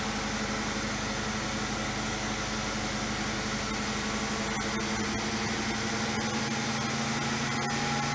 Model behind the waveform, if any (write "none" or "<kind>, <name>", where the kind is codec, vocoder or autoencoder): none